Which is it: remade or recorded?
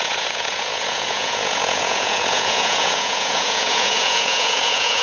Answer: remade